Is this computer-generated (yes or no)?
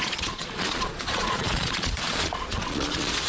yes